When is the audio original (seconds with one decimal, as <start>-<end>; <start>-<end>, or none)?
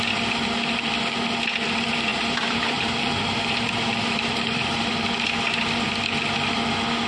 0.0-2.1; 4.9-7.1